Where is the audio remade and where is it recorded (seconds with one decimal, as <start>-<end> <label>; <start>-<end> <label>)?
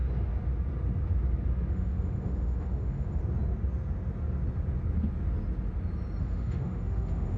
0.0-1.7 recorded; 1.7-3.2 remade; 3.2-6.2 recorded; 6.2-7.4 remade